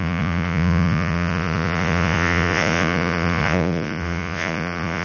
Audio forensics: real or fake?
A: fake